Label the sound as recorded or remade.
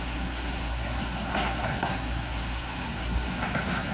remade